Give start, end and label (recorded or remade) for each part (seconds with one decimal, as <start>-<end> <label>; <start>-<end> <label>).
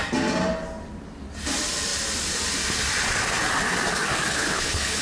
0.0-4.3 recorded; 4.3-5.0 remade